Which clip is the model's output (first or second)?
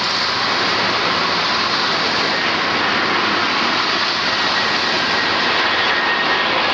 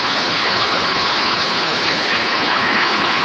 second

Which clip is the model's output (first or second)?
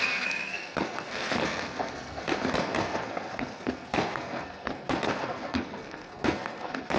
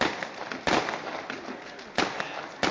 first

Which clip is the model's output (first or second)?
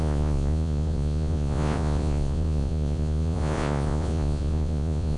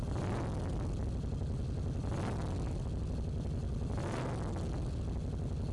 first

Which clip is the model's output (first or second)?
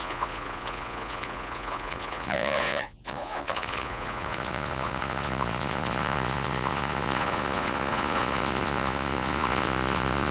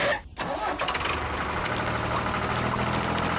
first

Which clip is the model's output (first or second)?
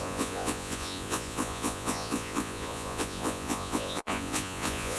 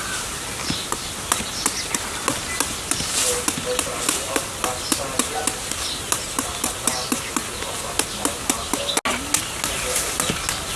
first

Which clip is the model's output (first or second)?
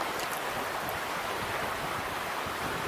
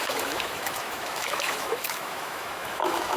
second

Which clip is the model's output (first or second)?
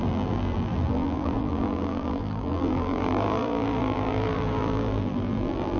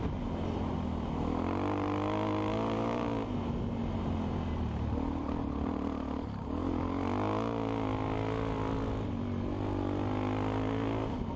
first